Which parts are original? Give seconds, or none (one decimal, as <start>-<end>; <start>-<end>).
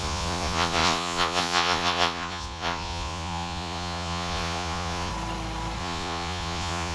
5.1-5.8